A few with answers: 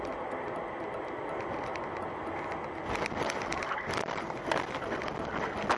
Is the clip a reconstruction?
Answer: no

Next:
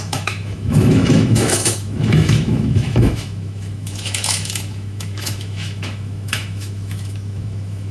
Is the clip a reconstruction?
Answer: yes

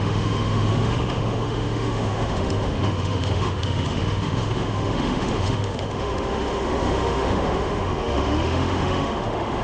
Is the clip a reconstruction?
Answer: yes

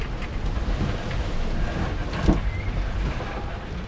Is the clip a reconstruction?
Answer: no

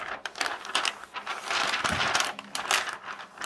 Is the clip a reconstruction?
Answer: no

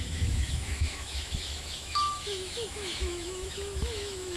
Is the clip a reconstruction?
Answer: yes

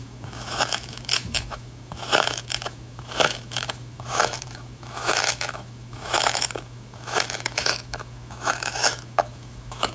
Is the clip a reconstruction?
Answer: yes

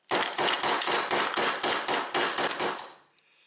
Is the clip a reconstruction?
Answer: no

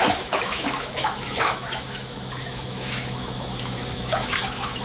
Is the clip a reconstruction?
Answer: yes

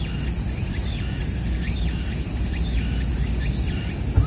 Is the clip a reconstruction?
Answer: no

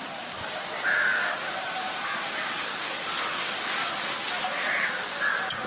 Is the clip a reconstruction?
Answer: no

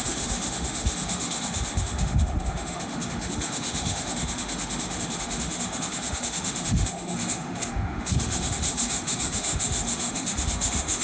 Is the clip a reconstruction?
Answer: yes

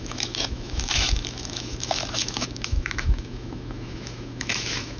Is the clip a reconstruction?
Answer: yes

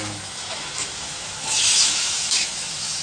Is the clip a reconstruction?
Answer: yes